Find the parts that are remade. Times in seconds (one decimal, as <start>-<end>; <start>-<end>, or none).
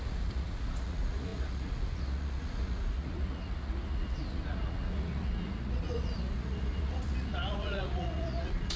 0.0-8.8